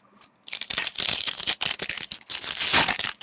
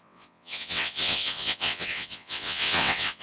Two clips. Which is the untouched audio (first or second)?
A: first